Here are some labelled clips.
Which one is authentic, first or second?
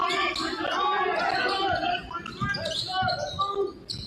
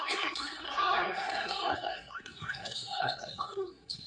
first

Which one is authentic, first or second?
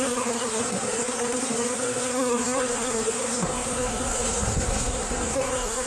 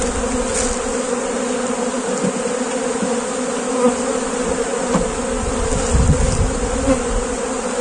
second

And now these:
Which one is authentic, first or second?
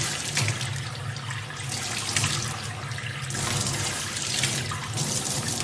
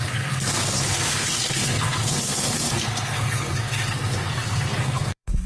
first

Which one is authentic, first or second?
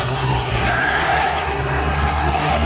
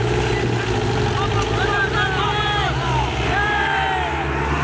second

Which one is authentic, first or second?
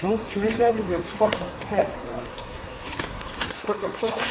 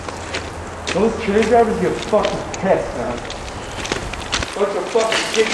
second